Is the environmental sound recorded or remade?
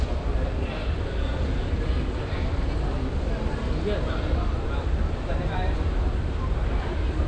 recorded